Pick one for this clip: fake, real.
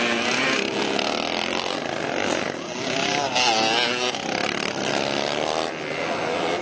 real